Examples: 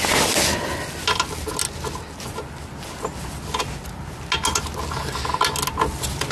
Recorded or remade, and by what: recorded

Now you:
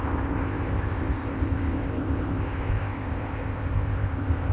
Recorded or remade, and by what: remade, codec, ZipCodec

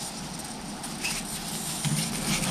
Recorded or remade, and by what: recorded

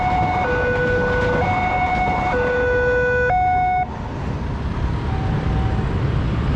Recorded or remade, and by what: recorded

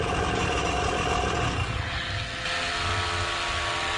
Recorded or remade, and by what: recorded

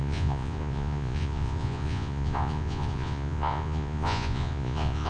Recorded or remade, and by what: remade, vocoder, Vocos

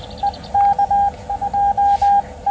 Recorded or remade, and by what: recorded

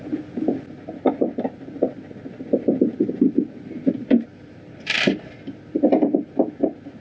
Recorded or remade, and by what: remade, vocoder, BigVGAN v2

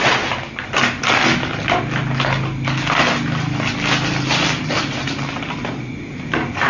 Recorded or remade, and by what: recorded